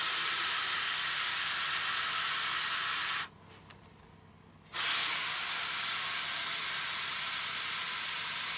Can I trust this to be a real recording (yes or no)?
yes